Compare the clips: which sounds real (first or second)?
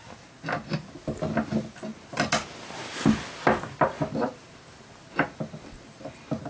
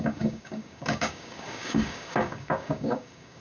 first